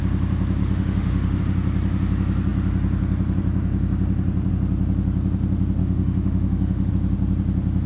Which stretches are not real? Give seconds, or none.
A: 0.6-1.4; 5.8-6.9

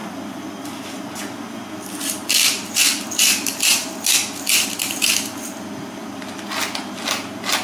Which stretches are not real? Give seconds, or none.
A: none

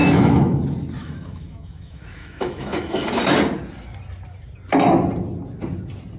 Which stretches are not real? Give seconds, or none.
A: 0.0-0.6; 1.0-3.1

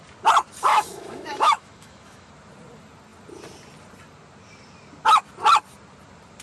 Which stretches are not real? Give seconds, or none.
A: 0.7-2.3

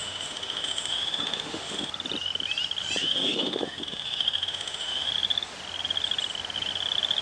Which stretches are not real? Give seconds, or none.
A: 0.0-1.9; 3.0-5.1

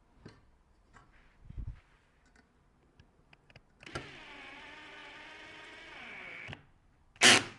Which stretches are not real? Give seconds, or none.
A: none

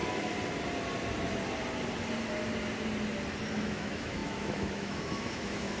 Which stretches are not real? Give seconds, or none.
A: 3.5-5.8

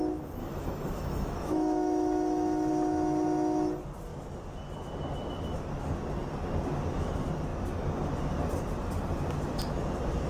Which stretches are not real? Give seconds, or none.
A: 0.4-2.7